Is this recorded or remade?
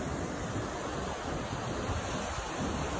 recorded